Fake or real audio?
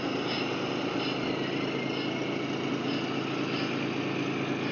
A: real